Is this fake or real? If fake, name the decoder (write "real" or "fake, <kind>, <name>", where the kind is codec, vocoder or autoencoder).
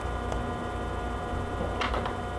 real